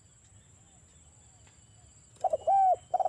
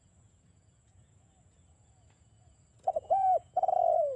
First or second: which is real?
first